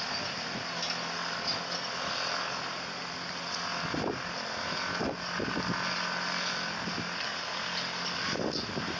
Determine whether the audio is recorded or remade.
recorded